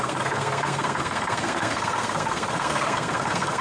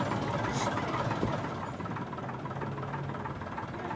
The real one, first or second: second